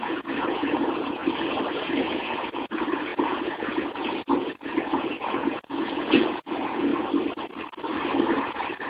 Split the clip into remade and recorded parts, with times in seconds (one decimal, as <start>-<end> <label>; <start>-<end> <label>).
0.0-1.2 remade; 1.2-1.7 recorded; 1.7-6.9 remade; 6.9-8.3 recorded; 8.3-8.9 remade

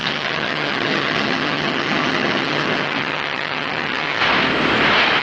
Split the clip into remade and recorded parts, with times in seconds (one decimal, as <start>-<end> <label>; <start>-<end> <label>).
0.0-4.2 remade; 4.2-5.2 recorded

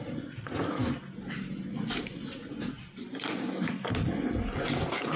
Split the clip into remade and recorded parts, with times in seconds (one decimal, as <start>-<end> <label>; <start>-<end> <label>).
0.0-5.2 recorded

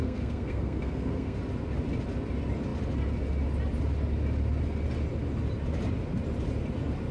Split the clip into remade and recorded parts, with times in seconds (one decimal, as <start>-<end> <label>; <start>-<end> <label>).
0.0-1.4 remade; 1.4-7.1 recorded

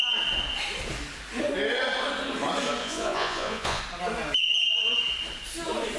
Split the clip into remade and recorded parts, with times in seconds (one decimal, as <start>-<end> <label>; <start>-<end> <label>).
0.0-2.8 recorded; 2.8-3.8 remade; 3.8-6.0 recorded

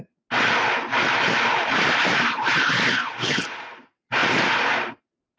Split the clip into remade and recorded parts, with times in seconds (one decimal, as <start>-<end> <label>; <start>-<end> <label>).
0.0-3.0 recorded; 3.0-3.8 remade; 3.8-4.2 recorded; 4.2-4.9 remade; 4.9-5.4 recorded

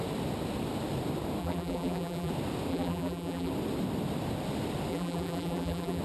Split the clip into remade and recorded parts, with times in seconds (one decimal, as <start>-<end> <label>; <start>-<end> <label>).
0.0-1.4 recorded; 1.4-2.3 remade; 2.3-2.7 recorded; 2.7-3.5 remade; 3.5-4.9 recorded; 4.9-6.0 remade